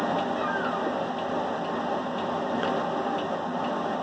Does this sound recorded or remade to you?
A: recorded